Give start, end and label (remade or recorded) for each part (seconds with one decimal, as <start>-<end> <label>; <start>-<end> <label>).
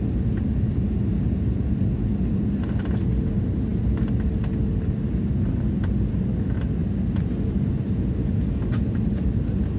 0.0-9.8 recorded